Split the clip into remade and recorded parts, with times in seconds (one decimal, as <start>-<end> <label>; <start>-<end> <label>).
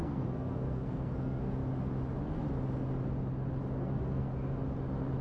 0.0-1.6 remade; 1.6-3.8 recorded; 3.8-4.3 remade; 4.3-5.2 recorded